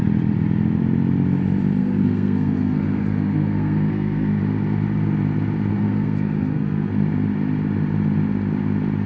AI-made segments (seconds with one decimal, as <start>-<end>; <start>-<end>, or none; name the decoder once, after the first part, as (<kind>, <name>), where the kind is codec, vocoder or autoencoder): 1.8-4.4 (codec, SNAC); 5.7-6.9